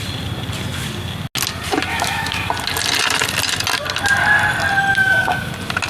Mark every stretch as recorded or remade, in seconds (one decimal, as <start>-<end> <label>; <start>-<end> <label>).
0.0-1.9 recorded; 1.9-2.5 remade; 2.5-5.0 recorded; 5.0-5.5 remade; 5.5-5.9 recorded